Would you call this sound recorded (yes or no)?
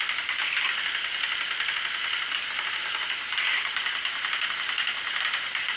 yes